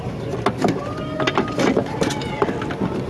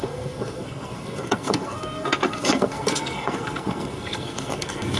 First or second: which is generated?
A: second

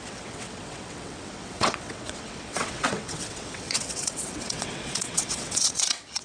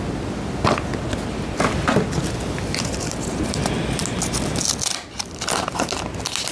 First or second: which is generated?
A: first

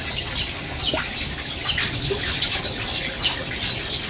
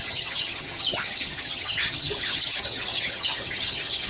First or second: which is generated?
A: second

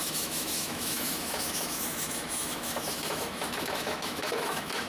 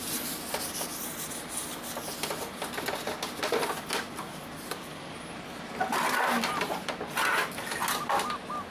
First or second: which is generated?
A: first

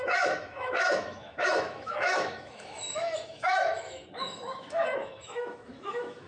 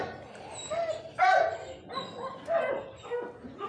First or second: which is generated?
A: first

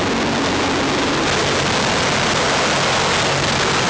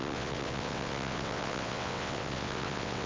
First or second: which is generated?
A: second